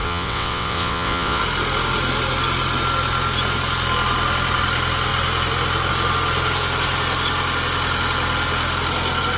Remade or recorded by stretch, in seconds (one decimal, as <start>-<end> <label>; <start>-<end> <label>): 0.0-1.4 remade; 1.4-9.4 recorded